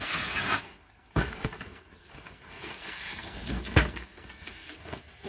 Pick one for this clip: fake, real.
fake